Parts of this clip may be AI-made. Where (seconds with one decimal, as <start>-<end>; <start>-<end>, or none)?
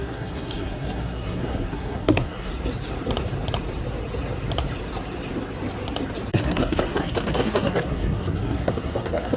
0.0-2.5; 6.3-9.4